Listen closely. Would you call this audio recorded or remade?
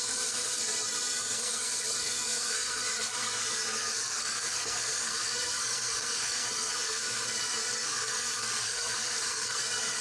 remade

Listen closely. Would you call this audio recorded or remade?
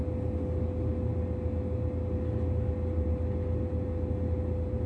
recorded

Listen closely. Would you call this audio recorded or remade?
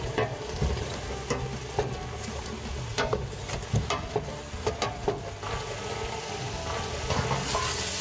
recorded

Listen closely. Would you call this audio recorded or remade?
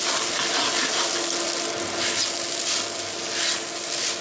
recorded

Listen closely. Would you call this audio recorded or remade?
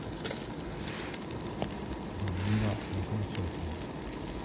recorded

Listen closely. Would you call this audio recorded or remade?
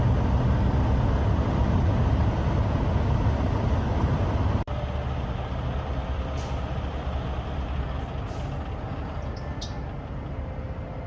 recorded